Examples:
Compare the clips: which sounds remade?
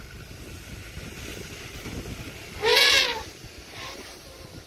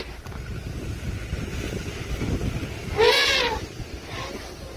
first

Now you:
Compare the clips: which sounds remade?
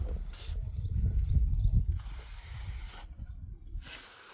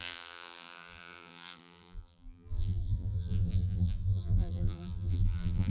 second